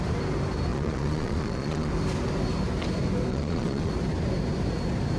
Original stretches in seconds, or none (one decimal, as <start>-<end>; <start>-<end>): 0.0-0.7; 1.9-3.3; 3.9-5.2